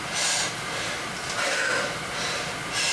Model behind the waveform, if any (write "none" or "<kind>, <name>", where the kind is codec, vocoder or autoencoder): none